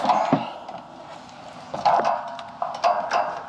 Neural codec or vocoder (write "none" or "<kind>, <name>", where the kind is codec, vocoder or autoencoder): none